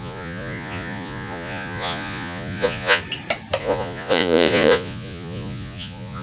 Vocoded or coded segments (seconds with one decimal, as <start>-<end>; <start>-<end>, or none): 0.0-3.0; 3.6-6.2